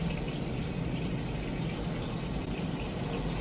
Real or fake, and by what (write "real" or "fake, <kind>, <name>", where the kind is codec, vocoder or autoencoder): real